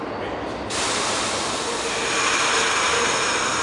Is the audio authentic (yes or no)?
yes